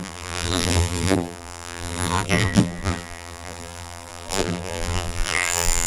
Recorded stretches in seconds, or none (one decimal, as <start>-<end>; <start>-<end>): none